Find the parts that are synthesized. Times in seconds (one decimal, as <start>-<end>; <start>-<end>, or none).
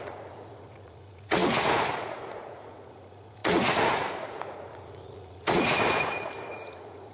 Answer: 0.0-7.1